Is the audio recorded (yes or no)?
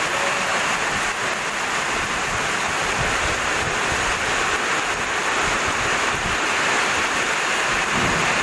yes